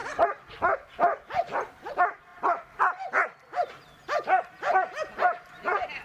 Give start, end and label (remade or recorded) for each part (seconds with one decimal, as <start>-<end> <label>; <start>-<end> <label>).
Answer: 0.0-0.5 remade; 0.5-6.0 recorded